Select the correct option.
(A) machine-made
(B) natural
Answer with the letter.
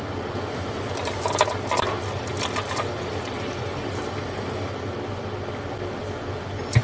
B